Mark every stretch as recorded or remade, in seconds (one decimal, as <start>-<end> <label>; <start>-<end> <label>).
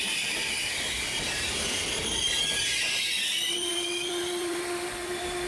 0.0-5.5 remade